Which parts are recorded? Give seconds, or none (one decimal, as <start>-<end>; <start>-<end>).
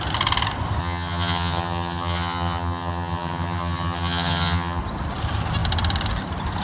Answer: 0.0-0.8; 4.8-6.6